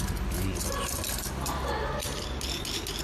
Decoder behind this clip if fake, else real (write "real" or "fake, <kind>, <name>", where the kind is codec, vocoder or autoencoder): real